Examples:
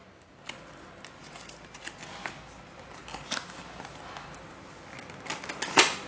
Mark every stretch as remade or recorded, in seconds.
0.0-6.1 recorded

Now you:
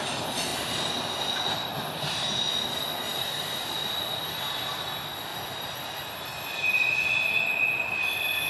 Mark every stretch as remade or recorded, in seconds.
0.0-0.5 recorded; 0.5-1.1 remade; 1.1-1.7 recorded; 1.7-2.4 remade; 2.4-8.5 recorded

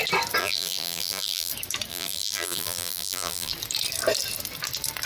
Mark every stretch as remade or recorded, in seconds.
0.0-0.4 recorded; 0.4-1.5 remade; 1.5-1.9 recorded; 1.9-3.5 remade; 3.5-5.1 recorded

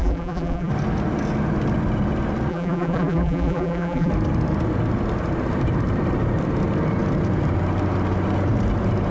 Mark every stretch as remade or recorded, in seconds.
0.0-0.7 remade; 0.7-2.5 recorded; 2.5-4.1 remade; 4.1-9.1 recorded

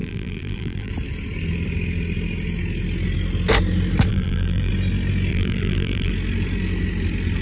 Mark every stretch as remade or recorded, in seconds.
0.0-0.9 remade; 0.9-4.1 recorded; 4.1-4.7 remade; 4.7-5.3 recorded; 5.3-6.1 remade; 6.1-7.4 recorded